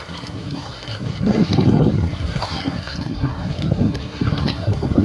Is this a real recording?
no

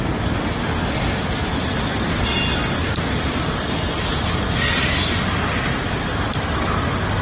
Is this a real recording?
yes